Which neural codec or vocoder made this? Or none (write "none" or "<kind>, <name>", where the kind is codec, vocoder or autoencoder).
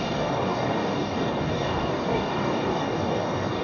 codec, DAC